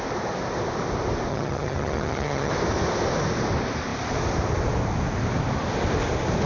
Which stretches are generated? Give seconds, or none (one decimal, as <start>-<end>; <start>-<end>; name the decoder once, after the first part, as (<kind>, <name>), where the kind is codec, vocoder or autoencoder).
1.3-2.5 (vocoder, HiFi-GAN)